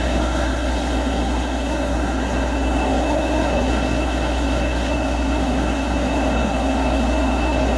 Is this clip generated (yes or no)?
yes